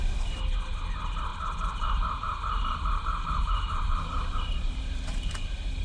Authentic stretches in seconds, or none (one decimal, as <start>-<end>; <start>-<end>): 0.0-1.3; 4.8-5.8